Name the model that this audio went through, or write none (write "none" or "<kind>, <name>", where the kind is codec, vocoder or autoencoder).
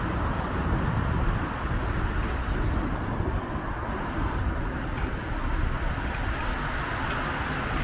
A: none